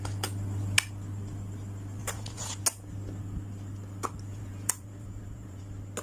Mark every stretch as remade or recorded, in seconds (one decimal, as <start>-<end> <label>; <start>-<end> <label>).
0.0-2.0 recorded; 2.0-2.6 remade; 2.6-4.3 recorded; 4.3-5.6 remade; 5.6-6.0 recorded